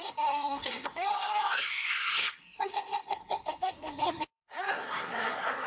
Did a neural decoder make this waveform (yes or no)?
yes